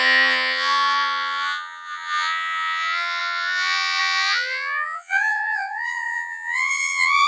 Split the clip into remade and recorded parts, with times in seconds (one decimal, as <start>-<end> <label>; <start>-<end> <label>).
0.0-7.3 remade